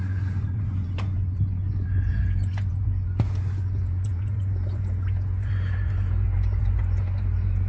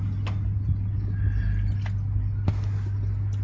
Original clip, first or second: second